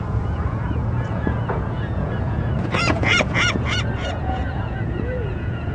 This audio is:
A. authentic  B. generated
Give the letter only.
B